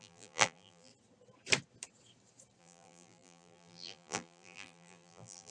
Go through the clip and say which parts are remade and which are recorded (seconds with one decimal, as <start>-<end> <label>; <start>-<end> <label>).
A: 0.0-0.9 remade; 0.9-2.6 recorded; 2.6-5.5 remade